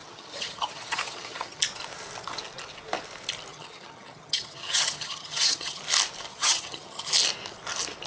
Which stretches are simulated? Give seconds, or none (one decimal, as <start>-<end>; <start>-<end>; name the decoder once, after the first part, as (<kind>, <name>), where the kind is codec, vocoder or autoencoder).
0.0-1.6 (vocoder, HiFi-GAN); 3.5-5.8; 6.3-7.1